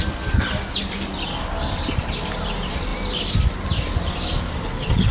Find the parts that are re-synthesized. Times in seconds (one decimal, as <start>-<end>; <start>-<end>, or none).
0.0-2.9; 4.1-5.1